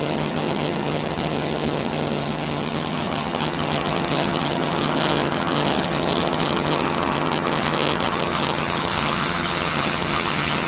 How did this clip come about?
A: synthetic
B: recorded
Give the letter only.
A